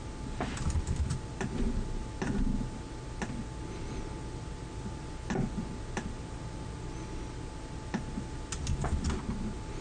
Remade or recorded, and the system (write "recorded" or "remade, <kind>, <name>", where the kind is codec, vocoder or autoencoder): recorded